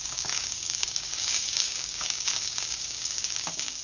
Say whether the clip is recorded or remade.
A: remade